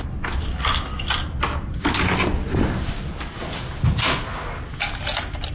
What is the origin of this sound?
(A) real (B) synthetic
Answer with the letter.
A